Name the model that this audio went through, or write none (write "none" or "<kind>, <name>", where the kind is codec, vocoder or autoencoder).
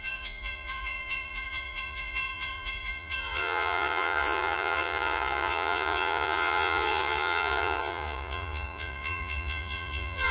vocoder, Vocos